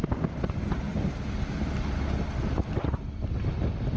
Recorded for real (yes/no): yes